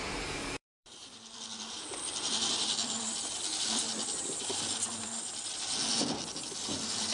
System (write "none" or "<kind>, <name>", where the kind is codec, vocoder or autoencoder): vocoder, BigVGAN v2